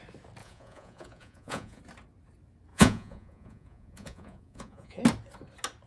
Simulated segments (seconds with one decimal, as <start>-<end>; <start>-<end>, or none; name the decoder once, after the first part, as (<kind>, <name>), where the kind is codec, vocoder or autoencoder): 0.4-1.8 (vocoder, Vocos); 2.7-5.0